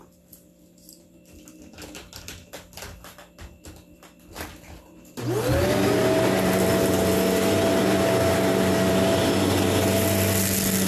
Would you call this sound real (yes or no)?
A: yes